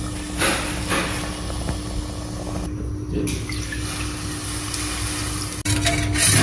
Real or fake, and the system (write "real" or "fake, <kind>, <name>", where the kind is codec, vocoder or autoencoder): real